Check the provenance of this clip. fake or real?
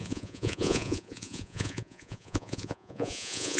fake